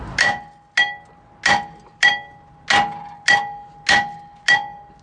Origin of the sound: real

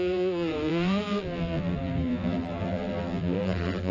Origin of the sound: fake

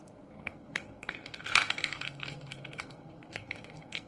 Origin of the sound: fake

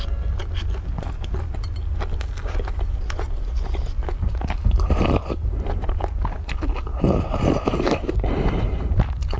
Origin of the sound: real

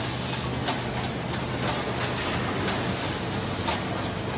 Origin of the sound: real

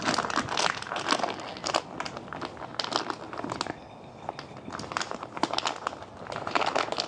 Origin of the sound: real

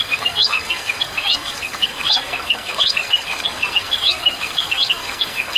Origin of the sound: fake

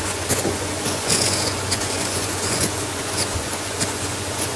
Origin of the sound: fake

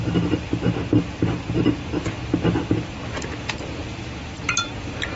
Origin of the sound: real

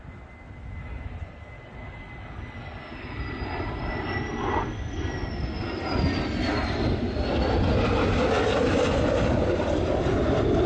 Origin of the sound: real